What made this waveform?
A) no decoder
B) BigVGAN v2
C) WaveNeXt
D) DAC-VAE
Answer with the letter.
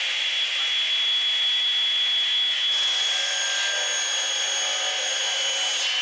A